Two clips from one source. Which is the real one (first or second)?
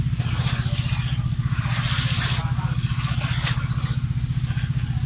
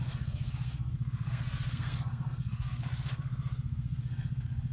first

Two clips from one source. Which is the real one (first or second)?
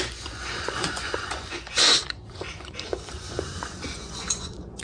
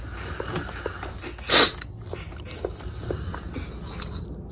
second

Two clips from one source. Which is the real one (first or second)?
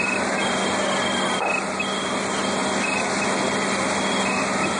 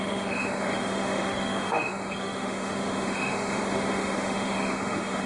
first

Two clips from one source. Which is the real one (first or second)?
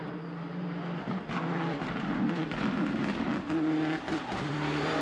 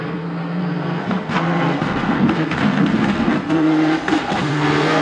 first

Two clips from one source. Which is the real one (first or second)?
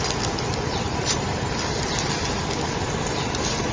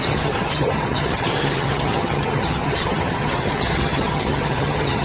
first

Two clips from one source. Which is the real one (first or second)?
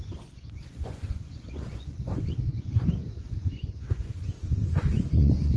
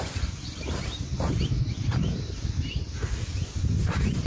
second